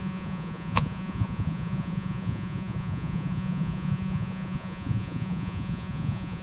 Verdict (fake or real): fake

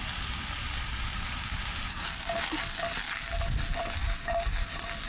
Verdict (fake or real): real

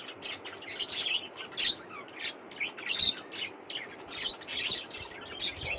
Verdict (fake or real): real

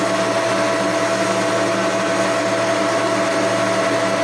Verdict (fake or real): real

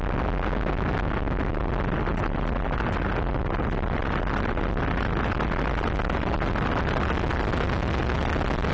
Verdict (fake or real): real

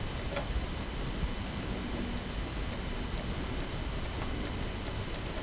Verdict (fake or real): real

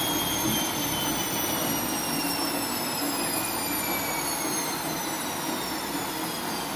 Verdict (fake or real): real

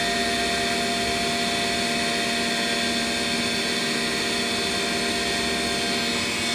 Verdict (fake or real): real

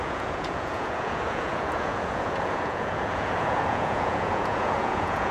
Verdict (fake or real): fake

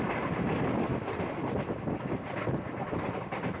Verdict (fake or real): real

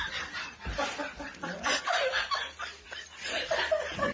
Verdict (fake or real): real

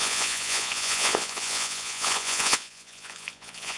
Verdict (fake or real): fake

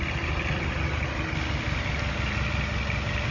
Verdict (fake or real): real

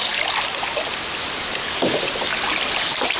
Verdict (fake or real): real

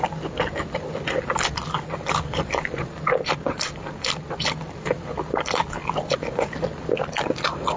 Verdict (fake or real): real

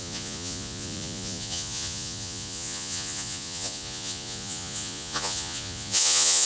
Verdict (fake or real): fake